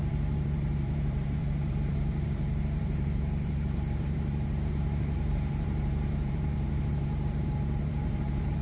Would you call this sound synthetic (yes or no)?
yes